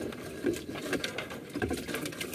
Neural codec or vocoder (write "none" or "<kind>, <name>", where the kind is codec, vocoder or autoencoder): none